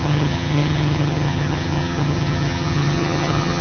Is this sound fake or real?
fake